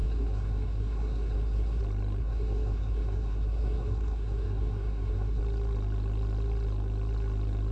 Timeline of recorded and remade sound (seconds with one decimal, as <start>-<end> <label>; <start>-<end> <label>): 0.0-1.8 remade; 1.8-2.2 recorded; 2.2-5.4 remade; 5.4-7.7 recorded